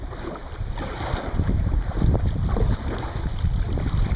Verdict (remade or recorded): recorded